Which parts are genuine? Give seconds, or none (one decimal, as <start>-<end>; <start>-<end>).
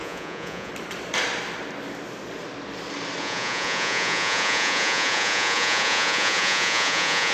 0.7-3.2